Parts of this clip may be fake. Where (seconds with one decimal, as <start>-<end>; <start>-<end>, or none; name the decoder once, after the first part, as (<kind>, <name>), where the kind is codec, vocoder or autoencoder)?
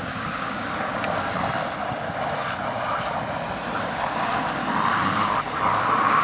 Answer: 0.0-1.3 (codec, DAC); 3.8-4.6